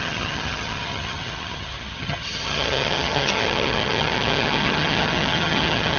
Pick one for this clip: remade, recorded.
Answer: remade